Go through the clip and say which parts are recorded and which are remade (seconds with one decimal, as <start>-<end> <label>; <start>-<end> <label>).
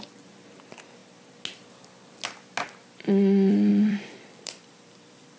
0.0-3.7 recorded; 3.7-5.4 remade